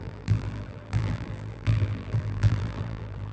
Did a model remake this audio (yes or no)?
yes